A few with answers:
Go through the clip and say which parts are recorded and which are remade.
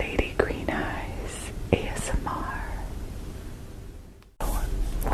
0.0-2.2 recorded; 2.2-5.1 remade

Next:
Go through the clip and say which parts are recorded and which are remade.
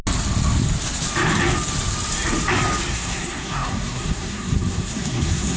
0.0-2.9 recorded; 2.9-5.6 remade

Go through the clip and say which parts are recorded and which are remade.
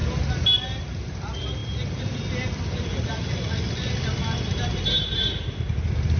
0.0-6.2 recorded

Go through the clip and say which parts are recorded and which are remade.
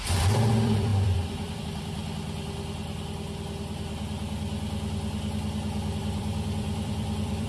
0.0-2.0 remade; 2.0-6.0 recorded; 6.0-7.5 remade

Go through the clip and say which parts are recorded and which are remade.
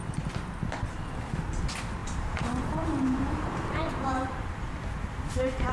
0.0-2.0 recorded; 2.0-4.5 remade; 4.5-5.7 recorded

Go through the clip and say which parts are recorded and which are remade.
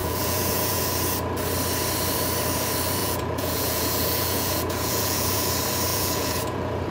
0.0-0.8 remade; 0.8-3.0 recorded; 3.0-5.5 remade; 5.5-5.9 recorded; 5.9-6.9 remade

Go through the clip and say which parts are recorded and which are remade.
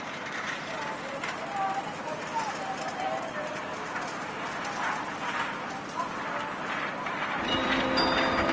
0.0-8.5 recorded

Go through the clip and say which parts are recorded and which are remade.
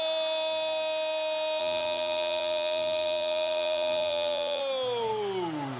0.0-1.6 recorded; 1.6-4.6 remade; 4.6-5.8 recorded